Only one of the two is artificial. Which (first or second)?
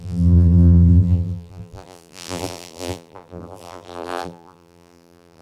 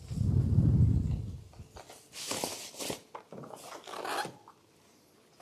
first